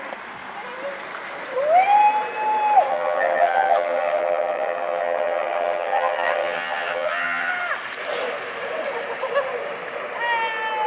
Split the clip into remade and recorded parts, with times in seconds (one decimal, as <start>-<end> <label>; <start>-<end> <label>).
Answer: 0.0-2.9 recorded; 2.9-7.5 remade; 7.5-10.9 recorded